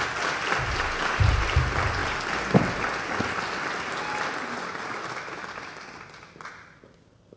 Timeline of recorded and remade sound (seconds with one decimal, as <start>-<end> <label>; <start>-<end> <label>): 0.0-7.4 recorded